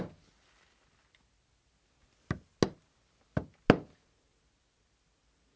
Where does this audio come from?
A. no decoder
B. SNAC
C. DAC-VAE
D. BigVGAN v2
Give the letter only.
A